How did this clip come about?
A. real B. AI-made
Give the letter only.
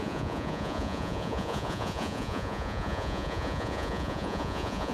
B